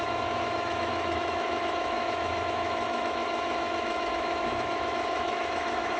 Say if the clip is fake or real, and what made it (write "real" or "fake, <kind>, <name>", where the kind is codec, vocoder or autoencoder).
fake, autoencoder, DAC-VAE